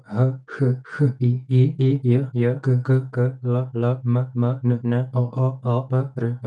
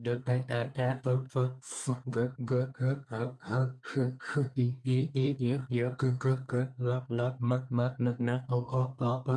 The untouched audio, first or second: first